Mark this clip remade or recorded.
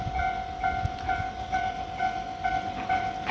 recorded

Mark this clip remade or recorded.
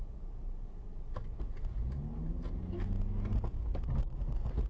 recorded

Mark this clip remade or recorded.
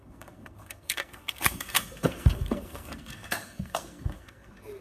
remade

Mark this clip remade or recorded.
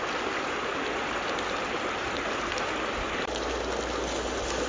recorded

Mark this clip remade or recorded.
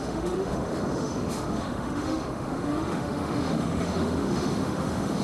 remade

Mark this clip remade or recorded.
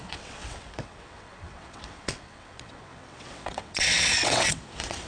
remade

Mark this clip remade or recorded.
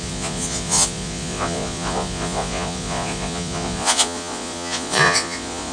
remade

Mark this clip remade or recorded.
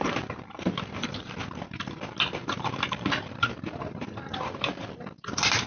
remade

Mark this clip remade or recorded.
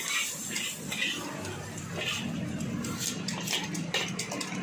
recorded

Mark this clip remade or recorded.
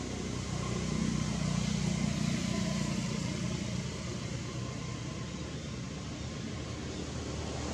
recorded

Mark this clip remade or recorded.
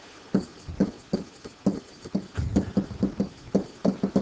recorded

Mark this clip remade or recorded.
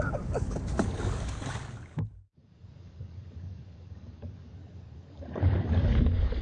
remade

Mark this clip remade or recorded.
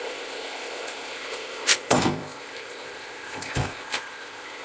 remade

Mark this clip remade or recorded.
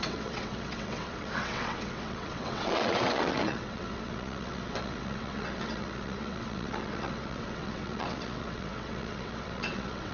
remade